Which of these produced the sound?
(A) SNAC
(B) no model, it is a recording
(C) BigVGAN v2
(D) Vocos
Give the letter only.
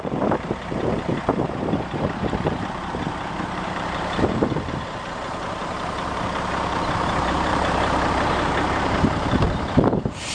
C